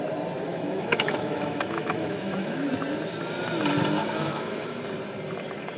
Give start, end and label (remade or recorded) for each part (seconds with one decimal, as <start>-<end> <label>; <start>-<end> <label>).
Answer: 0.0-0.5 recorded; 0.5-2.7 remade; 2.7-4.0 recorded; 4.0-4.8 remade; 4.8-5.8 recorded